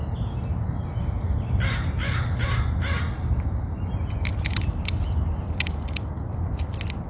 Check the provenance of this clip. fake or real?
real